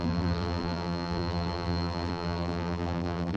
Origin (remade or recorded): remade